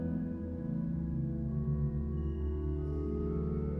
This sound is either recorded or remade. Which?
recorded